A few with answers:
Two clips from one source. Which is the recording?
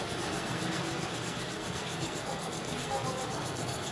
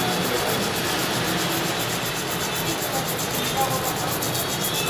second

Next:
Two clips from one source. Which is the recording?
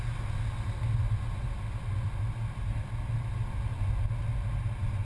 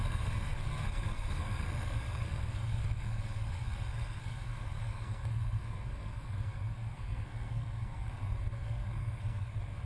first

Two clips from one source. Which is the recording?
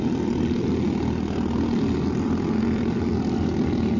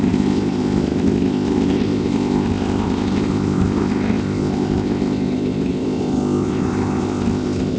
first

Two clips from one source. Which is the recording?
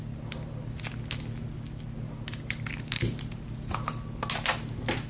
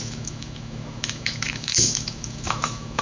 first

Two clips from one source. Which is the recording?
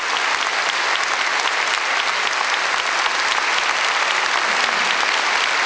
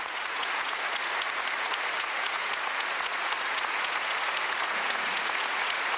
first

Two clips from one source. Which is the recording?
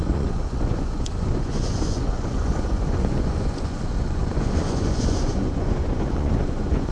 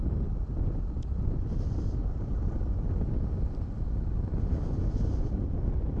second